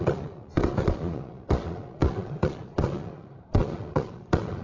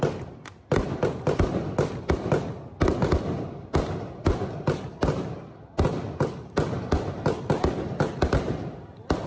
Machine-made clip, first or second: first